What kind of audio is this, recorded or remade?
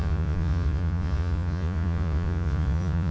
remade